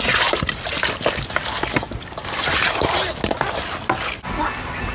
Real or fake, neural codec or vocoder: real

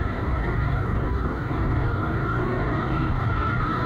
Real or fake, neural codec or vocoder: fake, codec, DAC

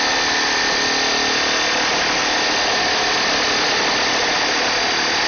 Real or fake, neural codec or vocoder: real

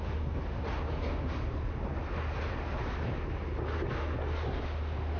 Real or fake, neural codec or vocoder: real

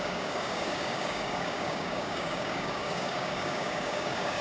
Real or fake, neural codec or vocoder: fake, codec, DAC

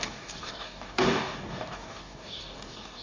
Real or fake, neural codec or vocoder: fake, codec, DAC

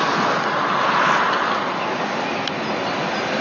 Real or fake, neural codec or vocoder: real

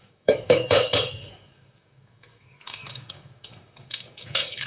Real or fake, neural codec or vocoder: fake, codec, DAC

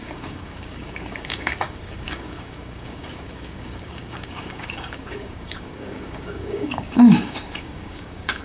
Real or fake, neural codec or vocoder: fake, codec, DAC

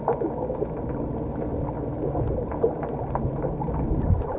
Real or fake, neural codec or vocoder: real